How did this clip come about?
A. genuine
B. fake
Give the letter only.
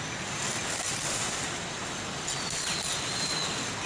A